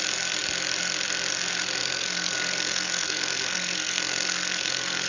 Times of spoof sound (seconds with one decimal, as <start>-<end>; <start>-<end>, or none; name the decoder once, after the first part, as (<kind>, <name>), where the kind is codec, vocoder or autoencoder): 1.8-5.1 (codec, SNAC)